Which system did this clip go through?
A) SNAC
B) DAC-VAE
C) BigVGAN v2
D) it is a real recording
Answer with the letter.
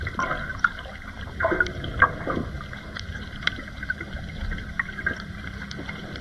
C